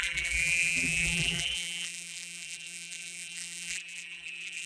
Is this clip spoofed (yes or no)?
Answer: yes